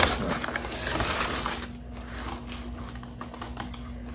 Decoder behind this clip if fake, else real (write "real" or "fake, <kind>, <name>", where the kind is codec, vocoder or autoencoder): real